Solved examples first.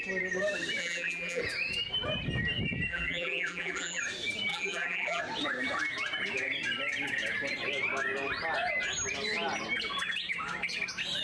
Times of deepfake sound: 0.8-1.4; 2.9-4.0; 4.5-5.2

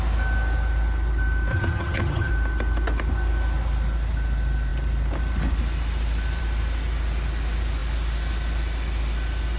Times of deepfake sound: 1.5-2.3

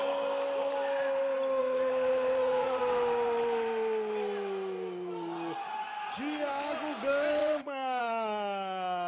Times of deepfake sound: 1.6-2.8; 7.4-8.0

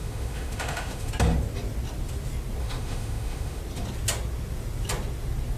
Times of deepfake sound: 0.0-1.1; 2.6-3.6